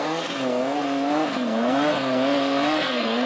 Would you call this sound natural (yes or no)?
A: no